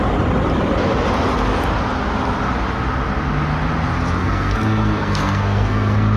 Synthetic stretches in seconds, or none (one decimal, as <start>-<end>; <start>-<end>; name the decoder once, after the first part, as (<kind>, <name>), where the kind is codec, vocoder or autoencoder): 4.2-6.2 (codec, SNAC)